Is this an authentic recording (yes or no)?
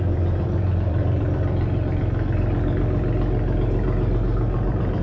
no